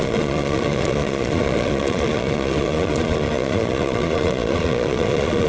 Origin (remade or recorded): remade